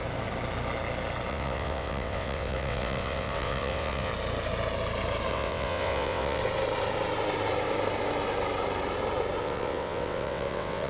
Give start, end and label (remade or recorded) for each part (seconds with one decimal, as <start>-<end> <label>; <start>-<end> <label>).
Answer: 0.0-1.3 recorded; 1.3-4.1 remade; 4.1-5.3 recorded; 5.3-6.4 remade; 6.4-9.4 recorded; 9.4-10.9 remade